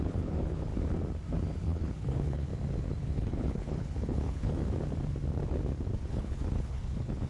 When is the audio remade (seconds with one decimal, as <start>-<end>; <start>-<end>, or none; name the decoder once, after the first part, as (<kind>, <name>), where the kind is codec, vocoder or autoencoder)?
0.0-0.7 (codec, HILCodec); 1.6-2.5; 3.0-4.6; 6.1-7.3